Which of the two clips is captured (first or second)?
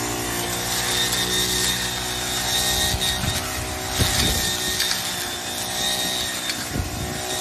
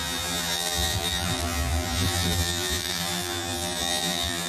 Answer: first